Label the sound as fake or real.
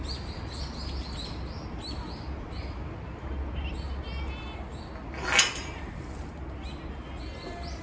real